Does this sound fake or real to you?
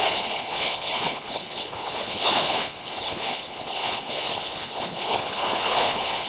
fake